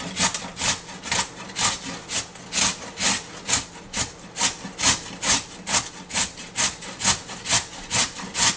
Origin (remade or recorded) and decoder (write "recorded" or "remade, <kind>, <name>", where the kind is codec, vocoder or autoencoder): recorded